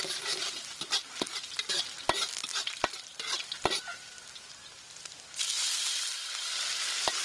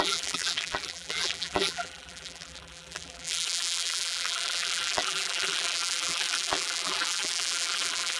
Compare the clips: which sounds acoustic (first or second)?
first